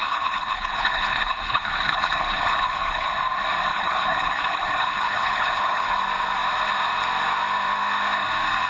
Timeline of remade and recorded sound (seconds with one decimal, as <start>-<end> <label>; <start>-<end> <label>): 0.0-3.1 remade; 3.1-3.7 recorded; 3.7-6.0 remade; 6.0-8.7 recorded